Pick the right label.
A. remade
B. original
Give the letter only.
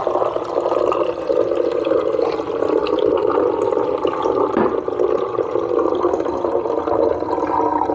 B